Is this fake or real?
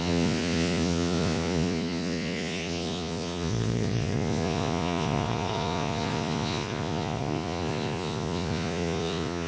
fake